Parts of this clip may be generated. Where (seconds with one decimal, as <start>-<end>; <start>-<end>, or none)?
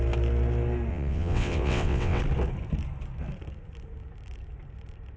0.9-2.2